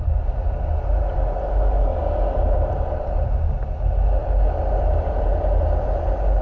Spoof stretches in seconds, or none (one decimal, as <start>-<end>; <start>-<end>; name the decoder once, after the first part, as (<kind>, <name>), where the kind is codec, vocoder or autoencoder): none